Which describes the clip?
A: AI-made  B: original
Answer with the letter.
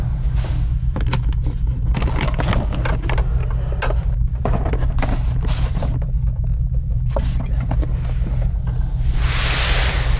B